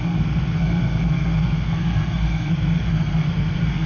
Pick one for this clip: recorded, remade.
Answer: remade